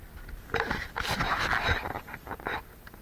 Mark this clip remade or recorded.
recorded